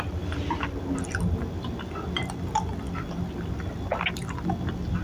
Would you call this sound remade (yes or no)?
no